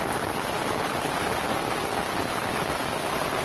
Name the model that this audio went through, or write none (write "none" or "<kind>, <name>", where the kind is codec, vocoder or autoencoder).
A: none